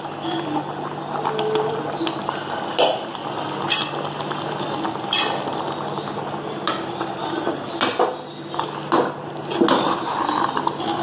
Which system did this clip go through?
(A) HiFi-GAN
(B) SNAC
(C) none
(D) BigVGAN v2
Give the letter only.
C